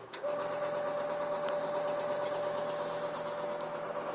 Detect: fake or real real